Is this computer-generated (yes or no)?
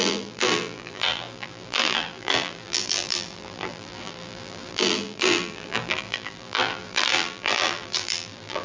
yes